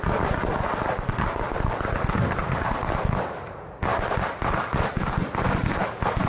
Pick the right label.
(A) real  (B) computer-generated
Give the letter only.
A